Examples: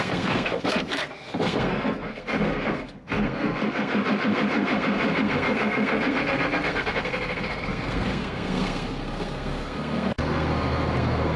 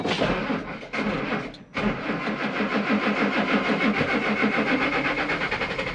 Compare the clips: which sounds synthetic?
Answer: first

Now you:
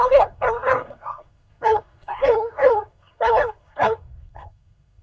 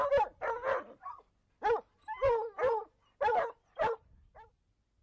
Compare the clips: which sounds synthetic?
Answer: first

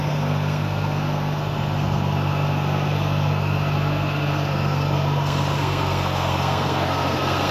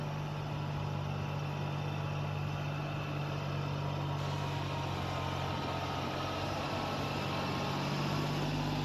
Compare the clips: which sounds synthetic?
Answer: first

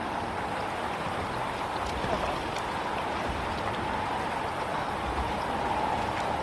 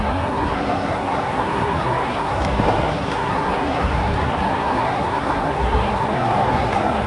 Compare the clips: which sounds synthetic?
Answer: second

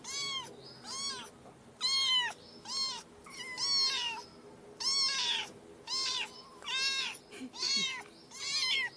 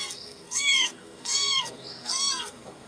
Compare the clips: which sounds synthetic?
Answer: second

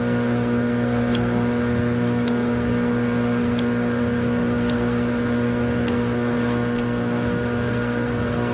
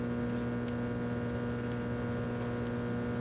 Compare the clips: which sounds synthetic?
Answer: first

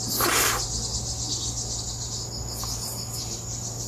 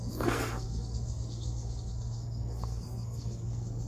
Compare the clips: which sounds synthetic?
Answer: second